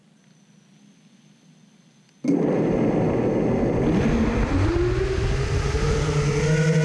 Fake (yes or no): no